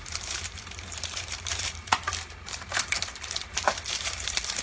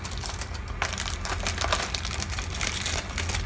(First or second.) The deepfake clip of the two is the first